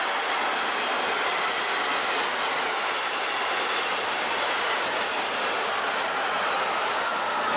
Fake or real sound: real